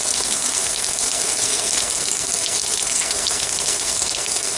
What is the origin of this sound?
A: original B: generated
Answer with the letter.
B